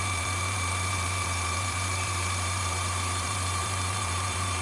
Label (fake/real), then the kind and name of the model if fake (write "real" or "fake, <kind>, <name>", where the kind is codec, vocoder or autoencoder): fake, vocoder, BigVGAN v2